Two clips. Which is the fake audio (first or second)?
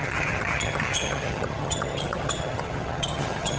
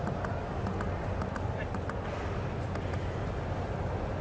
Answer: first